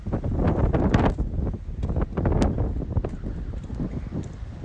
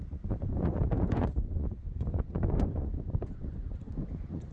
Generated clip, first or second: second